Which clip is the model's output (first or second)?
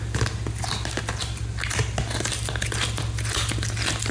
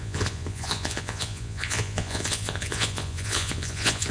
second